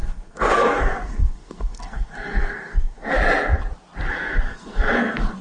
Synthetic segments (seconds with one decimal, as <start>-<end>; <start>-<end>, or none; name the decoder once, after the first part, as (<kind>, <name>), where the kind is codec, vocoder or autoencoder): 0.0-3.2 (codec, SNAC); 4.1-5.4